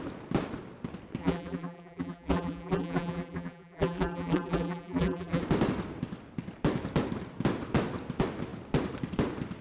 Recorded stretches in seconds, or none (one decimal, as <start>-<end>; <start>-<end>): 0.0-1.2; 5.4-9.6